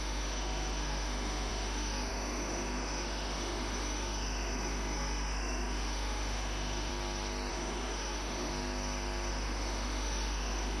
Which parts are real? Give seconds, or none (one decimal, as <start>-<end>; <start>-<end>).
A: 6.9-7.5; 8.5-9.3